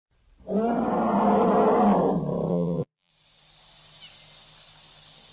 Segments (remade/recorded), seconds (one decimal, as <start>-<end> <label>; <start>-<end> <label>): 0.0-2.5 recorded; 2.5-3.1 remade; 3.1-5.3 recorded